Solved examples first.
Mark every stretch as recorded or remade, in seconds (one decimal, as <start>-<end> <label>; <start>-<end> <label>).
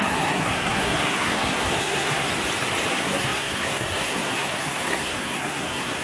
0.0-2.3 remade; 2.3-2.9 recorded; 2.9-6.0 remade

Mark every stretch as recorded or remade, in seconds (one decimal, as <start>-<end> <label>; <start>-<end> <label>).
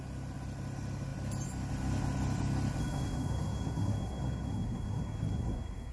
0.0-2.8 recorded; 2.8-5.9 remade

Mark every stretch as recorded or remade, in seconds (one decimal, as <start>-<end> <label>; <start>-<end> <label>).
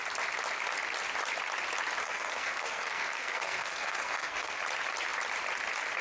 0.0-2.0 recorded; 2.0-4.6 remade; 4.6-6.0 recorded